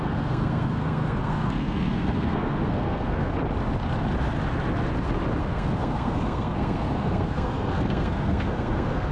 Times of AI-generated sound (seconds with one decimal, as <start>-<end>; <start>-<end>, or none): 0.0-3.3; 5.4-9.1